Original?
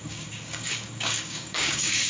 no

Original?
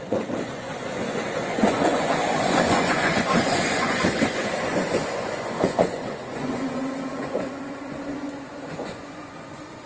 no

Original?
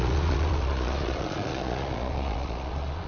no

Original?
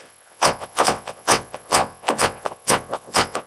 no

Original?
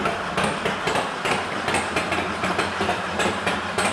no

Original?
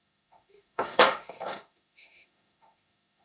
no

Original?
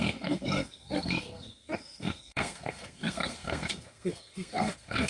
no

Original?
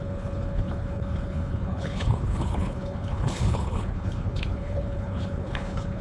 no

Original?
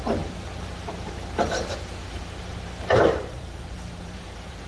no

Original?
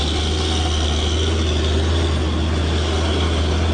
yes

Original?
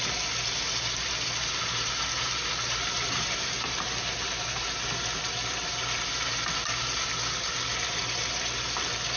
yes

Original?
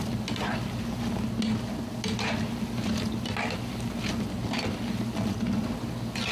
yes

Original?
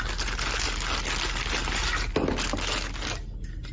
yes